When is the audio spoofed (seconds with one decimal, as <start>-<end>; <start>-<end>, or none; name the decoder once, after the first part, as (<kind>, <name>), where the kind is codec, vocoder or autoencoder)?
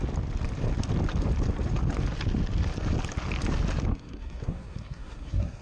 3.9-5.6 (codec, SNAC)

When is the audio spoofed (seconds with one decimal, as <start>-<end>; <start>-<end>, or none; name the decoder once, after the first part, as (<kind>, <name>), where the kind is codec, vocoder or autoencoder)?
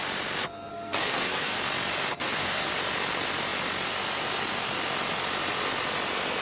0.7-1.6 (codec, SNAC); 2.1-2.7